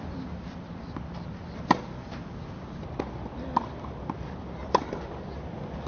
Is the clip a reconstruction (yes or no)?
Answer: no